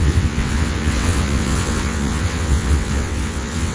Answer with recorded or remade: remade